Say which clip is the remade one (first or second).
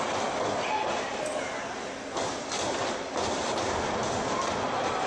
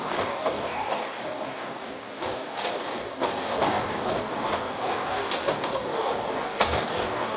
second